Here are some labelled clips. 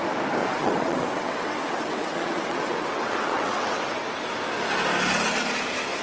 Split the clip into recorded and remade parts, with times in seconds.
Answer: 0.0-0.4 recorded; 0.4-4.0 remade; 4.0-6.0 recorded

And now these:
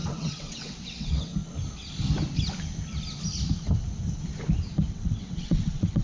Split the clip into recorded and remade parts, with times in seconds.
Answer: 0.0-1.3 remade; 1.3-4.9 recorded; 4.9-6.0 remade

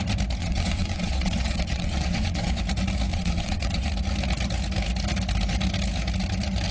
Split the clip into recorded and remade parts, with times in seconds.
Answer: 0.0-0.4 recorded; 0.4-2.6 remade; 2.6-3.1 recorded; 3.1-3.9 remade; 3.9-6.7 recorded

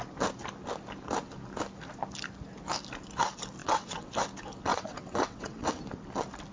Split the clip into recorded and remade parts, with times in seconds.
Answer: 0.0-3.6 recorded; 3.6-4.1 remade; 4.1-4.7 recorded; 4.7-5.8 remade; 5.8-6.5 recorded

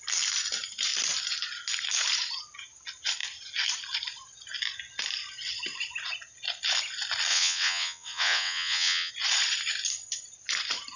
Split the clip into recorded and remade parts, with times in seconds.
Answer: 0.0-7.3 recorded; 7.3-9.1 remade; 9.1-11.0 recorded

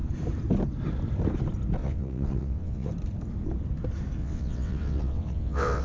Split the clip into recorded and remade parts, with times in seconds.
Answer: 0.0-1.8 recorded; 1.8-2.9 remade; 2.9-4.2 recorded; 4.2-5.8 remade

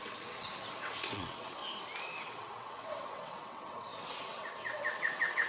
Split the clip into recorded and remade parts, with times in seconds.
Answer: 0.0-1.6 remade; 1.6-2.2 recorded; 2.2-5.5 remade

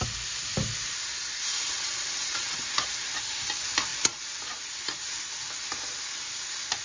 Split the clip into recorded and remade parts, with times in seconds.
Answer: 0.0-1.7 recorded; 1.7-2.6 remade; 2.6-6.8 recorded